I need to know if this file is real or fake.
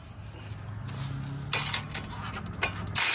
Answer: real